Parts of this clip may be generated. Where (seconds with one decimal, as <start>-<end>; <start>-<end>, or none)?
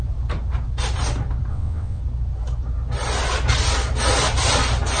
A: 1.5-2.0